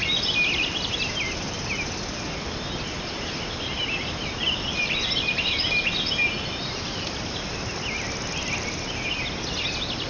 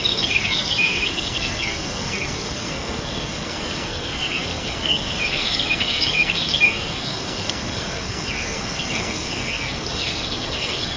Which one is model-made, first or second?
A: second